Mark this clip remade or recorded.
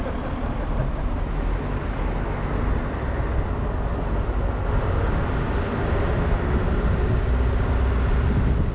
recorded